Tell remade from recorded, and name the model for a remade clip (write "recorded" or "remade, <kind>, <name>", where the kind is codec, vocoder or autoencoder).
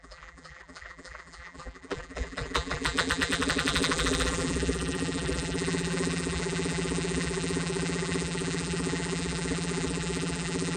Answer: remade, vocoder, BigVGAN v2